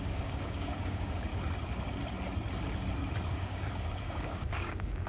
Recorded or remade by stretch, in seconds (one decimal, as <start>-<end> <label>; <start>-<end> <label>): 0.0-1.3 remade; 1.3-3.3 recorded; 3.3-5.1 remade